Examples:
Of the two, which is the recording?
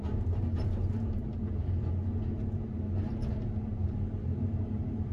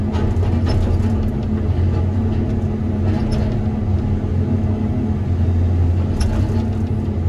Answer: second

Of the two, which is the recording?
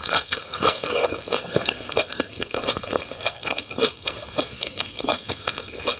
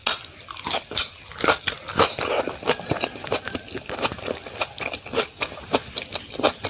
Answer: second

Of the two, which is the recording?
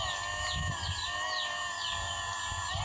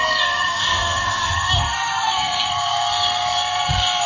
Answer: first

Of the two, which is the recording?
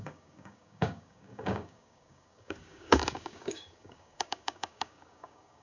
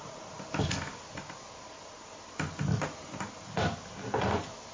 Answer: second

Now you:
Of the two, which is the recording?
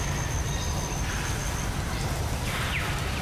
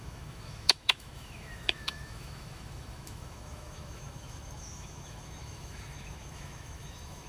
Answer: first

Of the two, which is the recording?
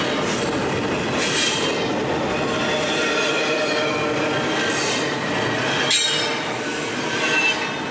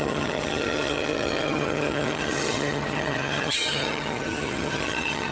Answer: first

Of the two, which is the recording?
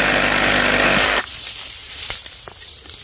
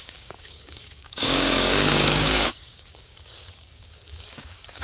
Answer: first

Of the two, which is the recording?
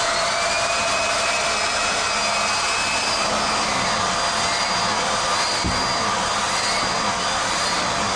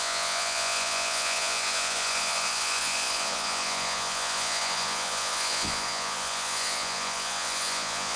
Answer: first